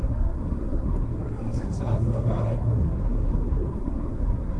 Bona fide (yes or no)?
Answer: no